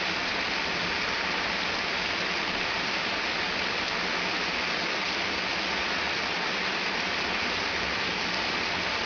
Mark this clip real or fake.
real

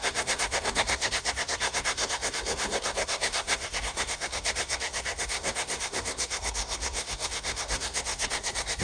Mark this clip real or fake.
fake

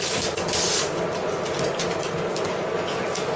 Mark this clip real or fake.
real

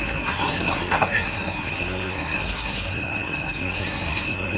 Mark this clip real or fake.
fake